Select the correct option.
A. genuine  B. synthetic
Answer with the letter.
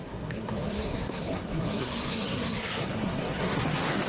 B